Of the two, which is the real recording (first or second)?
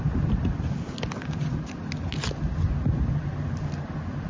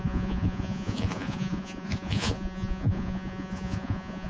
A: first